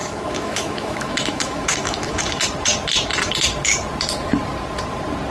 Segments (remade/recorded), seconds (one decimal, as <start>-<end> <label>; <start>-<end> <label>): 0.0-2.3 remade; 2.3-5.3 recorded